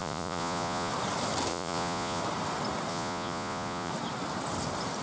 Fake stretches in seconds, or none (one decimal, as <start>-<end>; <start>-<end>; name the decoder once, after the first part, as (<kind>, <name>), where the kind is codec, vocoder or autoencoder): 0.0-0.9 (vocoder, Vocos); 1.5-2.2; 2.9-3.9